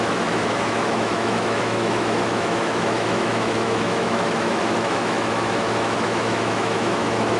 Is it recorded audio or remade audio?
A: remade